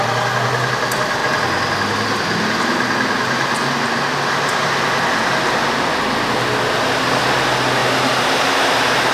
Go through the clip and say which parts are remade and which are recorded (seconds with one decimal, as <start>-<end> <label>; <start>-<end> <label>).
0.0-9.1 recorded